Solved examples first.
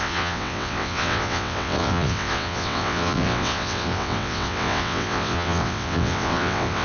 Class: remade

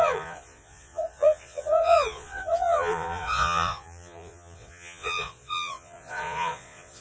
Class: remade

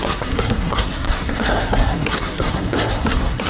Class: remade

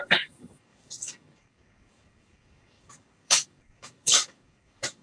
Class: remade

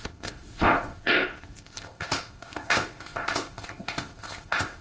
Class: remade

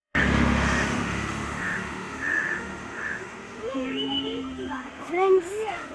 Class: remade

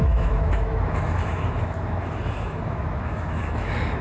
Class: remade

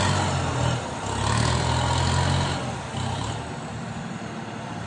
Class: recorded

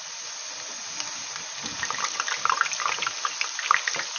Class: recorded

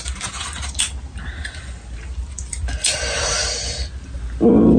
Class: recorded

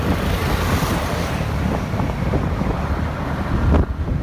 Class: recorded